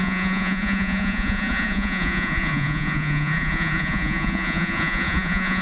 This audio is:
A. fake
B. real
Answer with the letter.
A